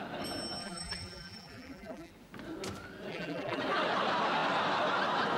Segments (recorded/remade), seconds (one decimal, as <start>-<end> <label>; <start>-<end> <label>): 0.0-0.6 recorded; 0.6-2.1 remade; 2.1-3.1 recorded; 3.1-3.6 remade; 3.6-5.4 recorded

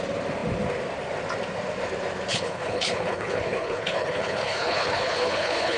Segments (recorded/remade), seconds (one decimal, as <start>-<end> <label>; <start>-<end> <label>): 0.0-2.3 recorded; 2.3-5.8 remade

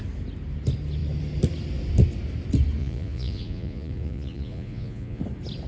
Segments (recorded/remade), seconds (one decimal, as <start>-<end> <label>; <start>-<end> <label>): 0.0-2.8 recorded; 2.8-5.2 remade; 5.2-5.7 recorded

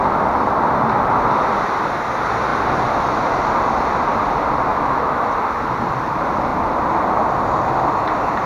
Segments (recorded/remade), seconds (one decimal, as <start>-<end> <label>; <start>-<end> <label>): 0.0-4.7 recorded; 4.7-5.3 remade; 5.3-8.5 recorded

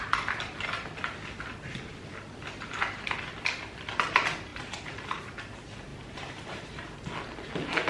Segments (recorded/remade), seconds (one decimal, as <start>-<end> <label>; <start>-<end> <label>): 0.0-4.5 recorded; 4.5-5.4 remade; 5.4-5.9 recorded; 5.9-7.1 remade; 7.1-7.9 recorded

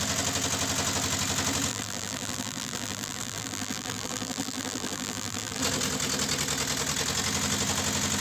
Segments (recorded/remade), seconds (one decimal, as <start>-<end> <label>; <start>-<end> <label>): 0.0-1.7 recorded; 1.7-5.6 remade; 5.6-8.2 recorded

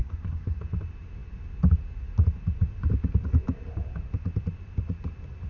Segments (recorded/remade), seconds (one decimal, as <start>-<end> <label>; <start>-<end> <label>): 0.0-0.6 remade; 0.6-5.5 recorded